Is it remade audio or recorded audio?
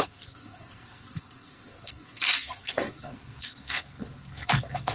remade